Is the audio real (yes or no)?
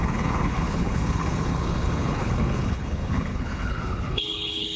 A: no